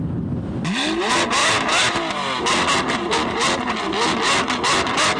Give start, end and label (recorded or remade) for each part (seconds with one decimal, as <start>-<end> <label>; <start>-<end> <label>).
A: 0.0-5.2 recorded